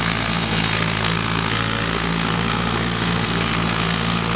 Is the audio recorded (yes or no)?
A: no